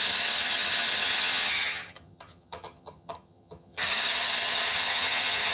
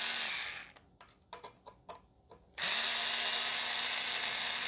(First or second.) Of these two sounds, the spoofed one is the first